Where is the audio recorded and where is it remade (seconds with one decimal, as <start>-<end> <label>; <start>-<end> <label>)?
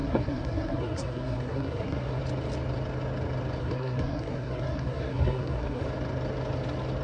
0.0-2.2 remade; 2.2-3.6 recorded; 3.6-5.8 remade; 5.8-7.0 recorded